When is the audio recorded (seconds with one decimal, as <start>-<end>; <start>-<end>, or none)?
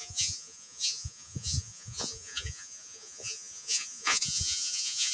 none